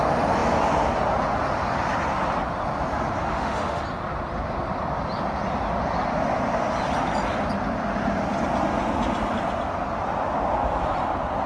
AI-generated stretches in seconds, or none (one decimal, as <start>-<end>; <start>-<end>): 3.3-3.8